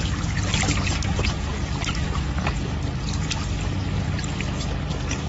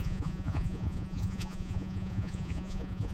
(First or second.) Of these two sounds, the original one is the first